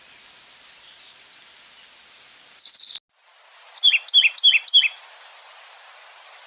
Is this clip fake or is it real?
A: real